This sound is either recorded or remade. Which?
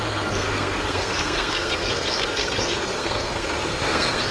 remade